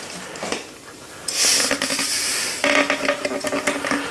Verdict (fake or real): real